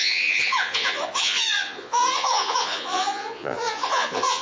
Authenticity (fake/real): fake